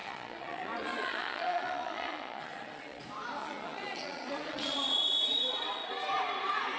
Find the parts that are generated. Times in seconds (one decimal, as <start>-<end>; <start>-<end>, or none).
0.0-3.0; 3.4-5.9